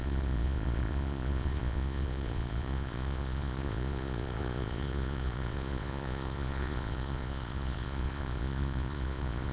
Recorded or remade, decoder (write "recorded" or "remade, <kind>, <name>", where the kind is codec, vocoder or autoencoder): remade, vocoder, Vocos